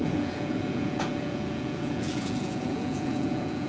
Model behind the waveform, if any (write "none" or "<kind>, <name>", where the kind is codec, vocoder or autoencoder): vocoder, Vocos